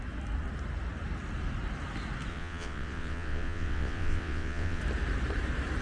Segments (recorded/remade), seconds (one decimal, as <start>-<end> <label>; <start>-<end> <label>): 0.0-2.3 recorded; 2.3-4.8 remade; 4.8-5.8 recorded

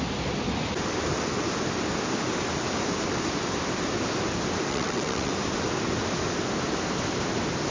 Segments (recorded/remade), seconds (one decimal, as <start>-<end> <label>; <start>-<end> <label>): 0.0-4.7 recorded; 4.7-5.3 remade; 5.3-7.7 recorded

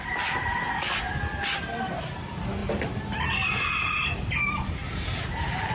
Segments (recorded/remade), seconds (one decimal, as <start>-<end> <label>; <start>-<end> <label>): 0.0-5.7 recorded

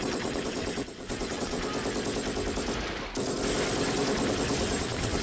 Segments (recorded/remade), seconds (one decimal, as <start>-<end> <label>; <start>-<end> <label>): 0.0-1.7 remade; 1.7-4.8 recorded; 4.8-5.2 remade